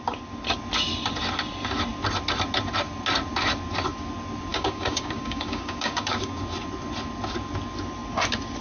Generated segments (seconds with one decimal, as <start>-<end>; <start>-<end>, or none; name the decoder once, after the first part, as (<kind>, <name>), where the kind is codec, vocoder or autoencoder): 4.5-6.4 (codec, DAC)